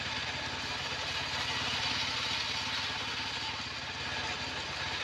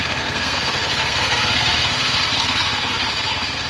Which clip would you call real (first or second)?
first